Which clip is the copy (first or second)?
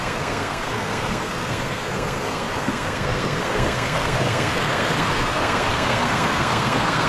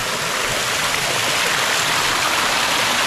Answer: first